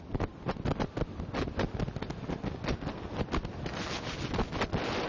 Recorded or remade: recorded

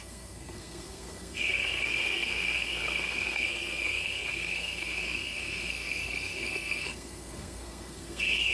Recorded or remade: remade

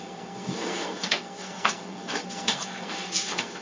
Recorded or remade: remade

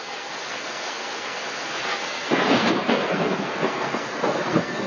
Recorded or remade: remade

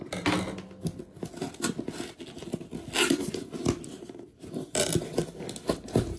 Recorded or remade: recorded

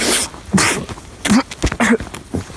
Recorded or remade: recorded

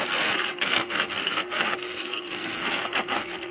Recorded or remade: remade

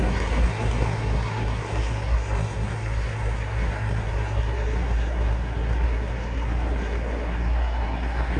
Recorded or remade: remade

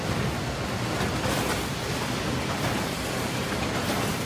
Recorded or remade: recorded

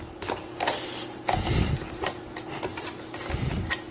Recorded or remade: recorded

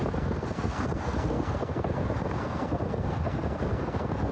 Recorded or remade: remade